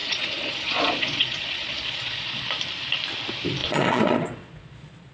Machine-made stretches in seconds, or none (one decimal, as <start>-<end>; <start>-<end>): 0.0-2.4; 3.6-5.1